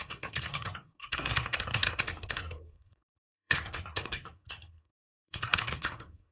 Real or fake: fake